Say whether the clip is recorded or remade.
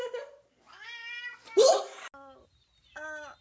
recorded